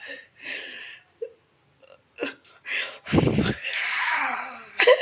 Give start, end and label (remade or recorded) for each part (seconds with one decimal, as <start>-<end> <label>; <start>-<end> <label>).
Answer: 0.0-5.0 recorded